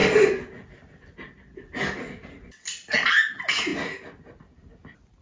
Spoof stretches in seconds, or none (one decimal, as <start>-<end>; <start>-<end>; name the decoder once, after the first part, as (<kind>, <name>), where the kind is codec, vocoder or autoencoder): none